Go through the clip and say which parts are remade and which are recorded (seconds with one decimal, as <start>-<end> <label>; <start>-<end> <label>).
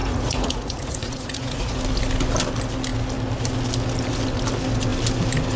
0.0-1.8 remade; 1.8-5.6 recorded